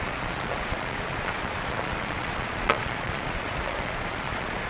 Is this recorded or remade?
remade